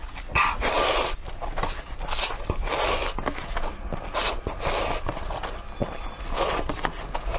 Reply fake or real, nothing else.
real